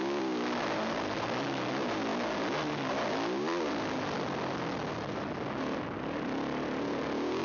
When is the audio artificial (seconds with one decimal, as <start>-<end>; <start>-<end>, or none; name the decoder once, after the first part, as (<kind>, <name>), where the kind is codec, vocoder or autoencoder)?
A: none